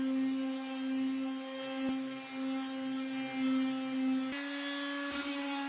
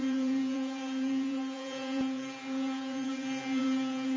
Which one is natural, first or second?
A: first